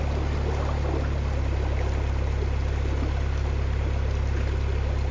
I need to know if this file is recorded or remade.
recorded